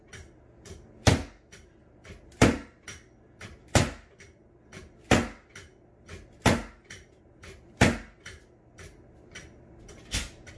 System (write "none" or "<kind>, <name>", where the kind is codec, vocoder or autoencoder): none